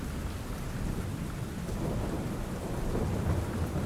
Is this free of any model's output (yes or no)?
yes